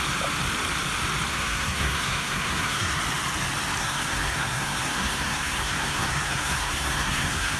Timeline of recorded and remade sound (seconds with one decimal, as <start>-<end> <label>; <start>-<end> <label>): 0.0-1.3 recorded; 1.3-3.0 remade; 3.0-3.8 recorded; 3.8-7.6 remade